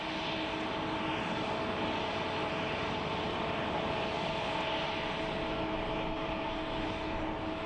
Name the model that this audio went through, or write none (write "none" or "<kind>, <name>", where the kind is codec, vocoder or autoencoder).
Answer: none